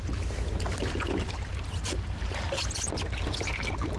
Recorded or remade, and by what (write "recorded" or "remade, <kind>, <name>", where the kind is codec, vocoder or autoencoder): recorded